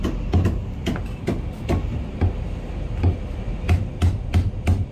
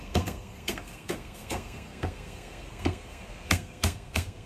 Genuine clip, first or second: first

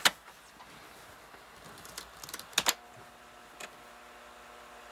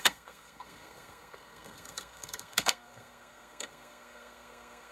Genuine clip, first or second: first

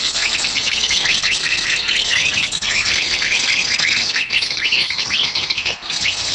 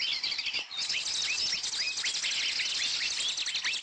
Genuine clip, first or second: second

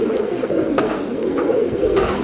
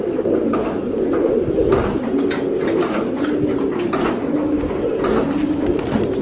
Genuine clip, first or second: second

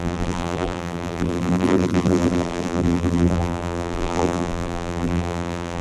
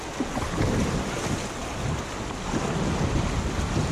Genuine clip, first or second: second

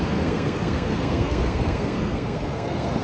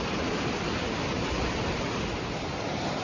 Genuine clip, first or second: second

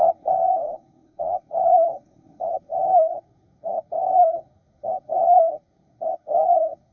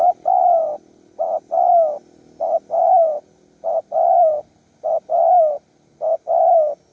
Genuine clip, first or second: second